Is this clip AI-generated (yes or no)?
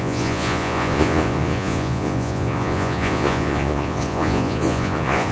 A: yes